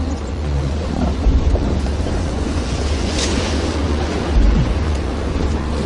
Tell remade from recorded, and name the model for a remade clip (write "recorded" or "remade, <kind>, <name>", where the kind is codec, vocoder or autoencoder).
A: remade, vocoder, Vocos